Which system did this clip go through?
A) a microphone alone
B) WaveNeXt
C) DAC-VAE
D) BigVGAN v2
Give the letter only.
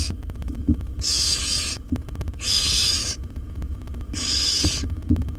C